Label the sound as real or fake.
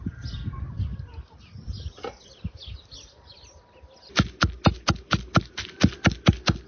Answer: real